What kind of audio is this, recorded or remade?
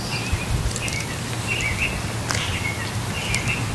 recorded